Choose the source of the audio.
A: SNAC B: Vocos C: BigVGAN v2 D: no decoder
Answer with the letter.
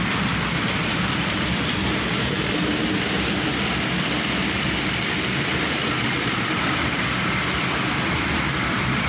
C